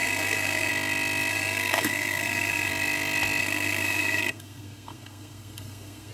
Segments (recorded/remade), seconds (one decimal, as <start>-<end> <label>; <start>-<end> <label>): 0.0-0.7 remade; 0.7-1.3 recorded; 1.3-2.7 remade; 2.7-3.4 recorded; 3.4-6.1 remade